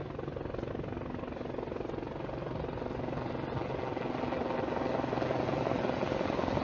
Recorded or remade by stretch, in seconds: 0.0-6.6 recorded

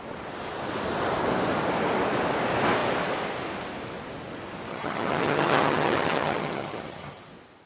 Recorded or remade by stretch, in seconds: 0.0-4.7 recorded; 4.7-7.3 remade; 7.3-7.7 recorded